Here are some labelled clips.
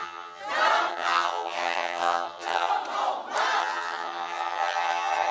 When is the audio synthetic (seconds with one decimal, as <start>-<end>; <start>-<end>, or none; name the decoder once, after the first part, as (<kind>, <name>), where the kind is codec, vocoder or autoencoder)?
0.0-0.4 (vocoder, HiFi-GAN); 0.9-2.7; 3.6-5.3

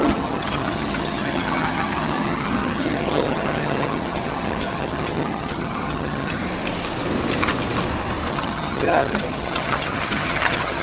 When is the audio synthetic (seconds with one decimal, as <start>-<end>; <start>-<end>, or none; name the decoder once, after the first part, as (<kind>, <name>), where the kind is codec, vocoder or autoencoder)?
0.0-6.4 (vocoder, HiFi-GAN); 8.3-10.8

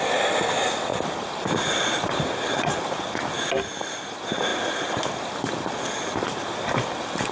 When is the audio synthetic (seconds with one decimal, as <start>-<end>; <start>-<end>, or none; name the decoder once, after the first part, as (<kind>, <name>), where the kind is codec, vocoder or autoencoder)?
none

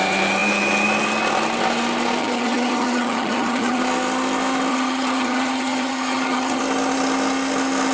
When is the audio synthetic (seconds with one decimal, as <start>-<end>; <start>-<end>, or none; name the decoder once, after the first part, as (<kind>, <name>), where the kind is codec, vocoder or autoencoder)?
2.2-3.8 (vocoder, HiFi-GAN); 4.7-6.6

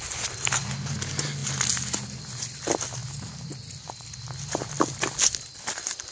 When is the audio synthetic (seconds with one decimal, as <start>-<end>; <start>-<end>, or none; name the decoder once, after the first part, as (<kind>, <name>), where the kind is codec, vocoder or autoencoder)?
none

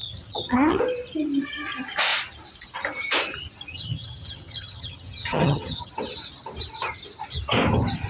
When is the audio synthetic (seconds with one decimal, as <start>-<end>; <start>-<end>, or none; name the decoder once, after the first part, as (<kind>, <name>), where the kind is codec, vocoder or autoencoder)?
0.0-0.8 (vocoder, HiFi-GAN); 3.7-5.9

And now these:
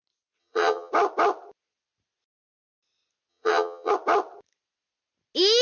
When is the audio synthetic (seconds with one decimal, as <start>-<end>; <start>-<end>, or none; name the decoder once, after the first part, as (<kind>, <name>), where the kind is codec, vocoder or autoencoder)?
0.4-0.9 (vocoder, HiFi-GAN); 3.3-3.9